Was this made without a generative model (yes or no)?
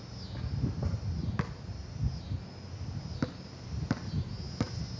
yes